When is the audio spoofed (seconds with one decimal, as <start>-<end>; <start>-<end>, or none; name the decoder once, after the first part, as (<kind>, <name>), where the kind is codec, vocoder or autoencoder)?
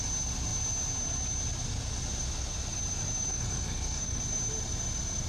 3.3-4.2 (codec, SNAC)